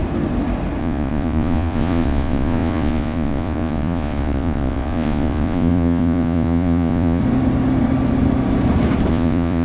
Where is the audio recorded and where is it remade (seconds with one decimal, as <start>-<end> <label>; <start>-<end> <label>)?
0.0-0.8 recorded; 0.8-7.2 remade; 7.2-9.1 recorded; 9.1-9.6 remade

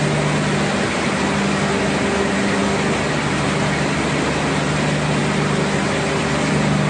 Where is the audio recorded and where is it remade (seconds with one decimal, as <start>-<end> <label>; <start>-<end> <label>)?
0.0-6.9 recorded